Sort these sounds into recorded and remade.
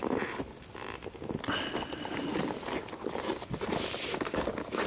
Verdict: recorded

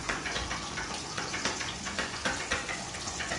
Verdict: remade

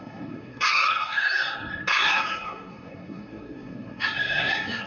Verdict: remade